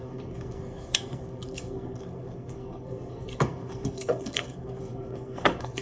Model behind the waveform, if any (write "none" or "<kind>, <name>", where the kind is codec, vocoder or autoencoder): codec, SNAC